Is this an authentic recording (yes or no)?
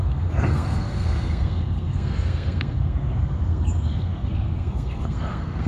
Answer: no